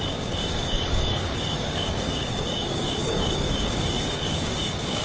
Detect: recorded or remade remade